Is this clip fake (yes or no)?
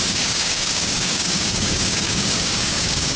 yes